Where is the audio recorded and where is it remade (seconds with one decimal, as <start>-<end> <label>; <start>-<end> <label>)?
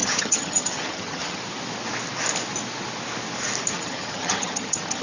0.0-1.4 remade; 1.4-3.7 recorded; 3.7-5.0 remade